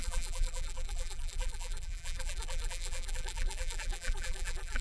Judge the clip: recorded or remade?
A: remade